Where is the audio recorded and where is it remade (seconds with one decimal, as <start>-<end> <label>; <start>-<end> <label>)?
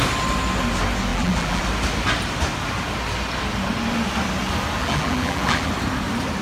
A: 0.0-1.1 recorded; 1.1-1.6 remade; 1.6-4.8 recorded; 4.8-5.7 remade; 5.7-6.4 recorded